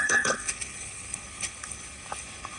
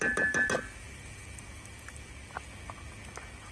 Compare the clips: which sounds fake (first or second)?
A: first